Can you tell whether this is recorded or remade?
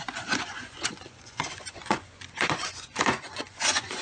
remade